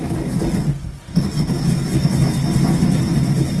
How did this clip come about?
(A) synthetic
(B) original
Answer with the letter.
B